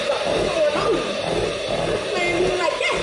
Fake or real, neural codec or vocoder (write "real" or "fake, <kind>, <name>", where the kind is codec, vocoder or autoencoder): real